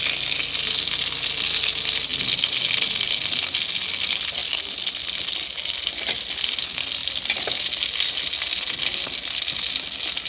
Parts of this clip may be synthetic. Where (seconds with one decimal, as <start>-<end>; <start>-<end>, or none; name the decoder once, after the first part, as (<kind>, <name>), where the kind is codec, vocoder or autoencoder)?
none